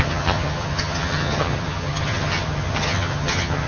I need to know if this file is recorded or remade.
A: remade